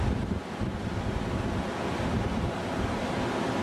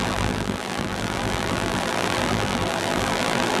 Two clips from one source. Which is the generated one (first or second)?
second